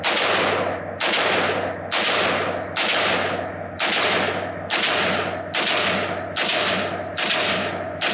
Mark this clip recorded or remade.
recorded